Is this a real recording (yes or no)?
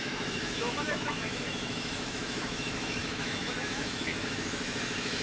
no